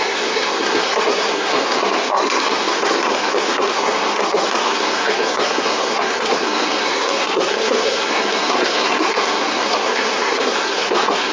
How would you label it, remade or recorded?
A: remade